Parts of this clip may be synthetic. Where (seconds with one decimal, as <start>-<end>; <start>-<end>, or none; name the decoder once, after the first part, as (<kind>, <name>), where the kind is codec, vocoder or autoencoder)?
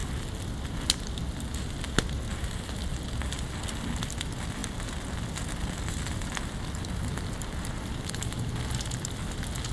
none